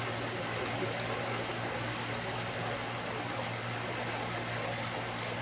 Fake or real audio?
real